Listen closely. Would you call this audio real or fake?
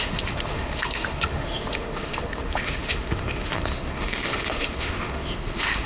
fake